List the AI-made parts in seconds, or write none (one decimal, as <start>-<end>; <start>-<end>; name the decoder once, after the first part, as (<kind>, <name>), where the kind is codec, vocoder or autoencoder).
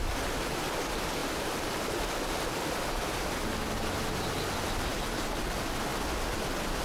1.2-2.0 (vocoder, BigVGAN v2); 4.9-5.4